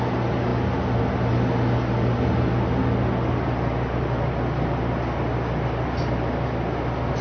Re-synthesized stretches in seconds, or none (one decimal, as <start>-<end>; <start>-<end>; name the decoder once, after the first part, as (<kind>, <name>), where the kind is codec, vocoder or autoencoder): none